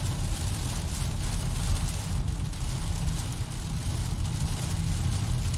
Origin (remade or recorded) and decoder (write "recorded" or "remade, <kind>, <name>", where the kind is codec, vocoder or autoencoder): recorded